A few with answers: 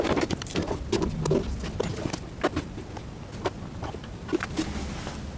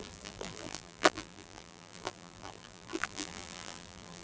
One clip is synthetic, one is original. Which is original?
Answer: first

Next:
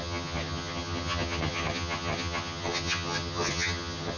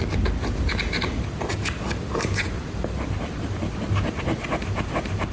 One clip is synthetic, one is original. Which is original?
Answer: second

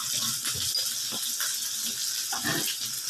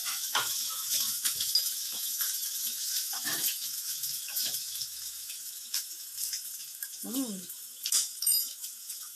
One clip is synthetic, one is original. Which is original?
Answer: first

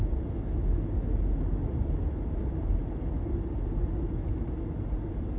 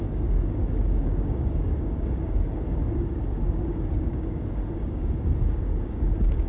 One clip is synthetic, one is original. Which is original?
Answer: first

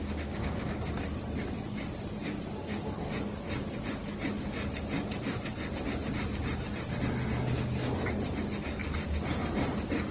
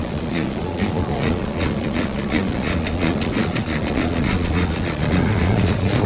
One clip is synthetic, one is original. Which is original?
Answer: first